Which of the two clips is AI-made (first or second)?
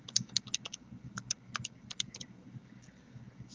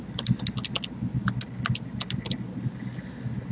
first